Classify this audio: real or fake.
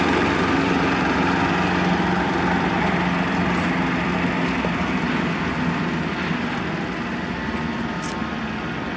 real